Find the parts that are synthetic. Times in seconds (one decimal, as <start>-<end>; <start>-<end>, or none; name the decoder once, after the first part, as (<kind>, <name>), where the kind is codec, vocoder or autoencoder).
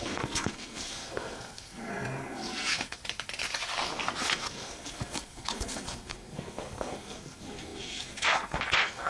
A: 0.0-3.0 (codec, SNAC); 4.2-9.1